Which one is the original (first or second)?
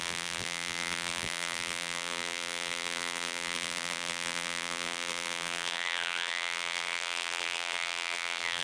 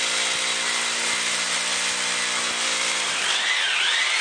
second